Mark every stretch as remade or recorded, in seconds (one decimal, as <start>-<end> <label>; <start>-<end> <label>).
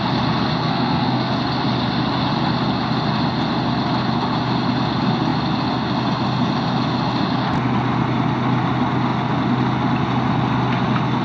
0.0-0.6 recorded; 0.6-1.3 remade; 1.3-11.2 recorded